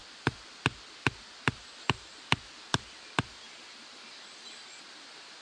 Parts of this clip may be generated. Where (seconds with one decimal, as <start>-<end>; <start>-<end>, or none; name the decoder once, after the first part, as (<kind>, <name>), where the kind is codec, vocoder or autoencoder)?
none